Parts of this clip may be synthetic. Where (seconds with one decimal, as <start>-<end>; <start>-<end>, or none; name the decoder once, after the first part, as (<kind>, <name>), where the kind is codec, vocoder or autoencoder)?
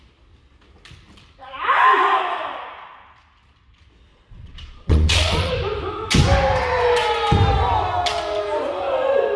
4.1-5.5 (vocoder, Vocos)